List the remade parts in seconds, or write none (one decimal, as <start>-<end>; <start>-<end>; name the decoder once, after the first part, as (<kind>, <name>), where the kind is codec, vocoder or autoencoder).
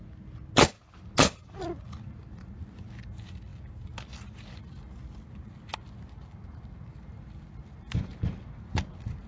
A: none